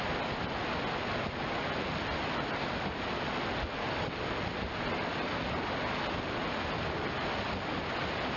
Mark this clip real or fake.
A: real